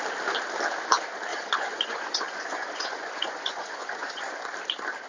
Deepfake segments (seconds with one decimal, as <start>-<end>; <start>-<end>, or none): 1.3-4.4